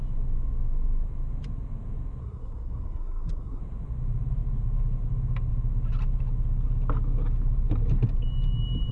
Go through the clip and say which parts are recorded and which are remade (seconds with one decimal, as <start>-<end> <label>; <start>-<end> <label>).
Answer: 0.0-2.2 recorded; 2.2-3.6 remade; 3.6-8.9 recorded